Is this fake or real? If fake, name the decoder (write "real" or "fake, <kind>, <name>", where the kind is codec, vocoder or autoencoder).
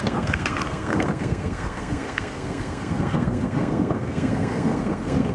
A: fake, codec, SNAC